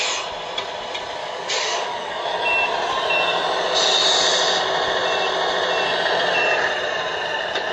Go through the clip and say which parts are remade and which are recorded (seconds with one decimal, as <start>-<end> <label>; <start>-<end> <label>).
0.0-1.2 recorded; 1.2-2.3 remade; 2.3-7.7 recorded